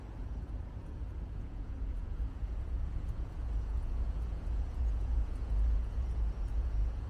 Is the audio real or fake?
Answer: fake